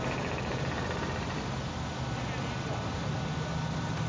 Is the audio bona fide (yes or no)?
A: yes